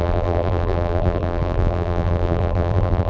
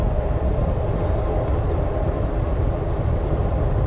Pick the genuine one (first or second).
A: second